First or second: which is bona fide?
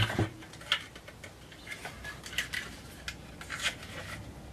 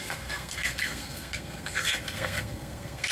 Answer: first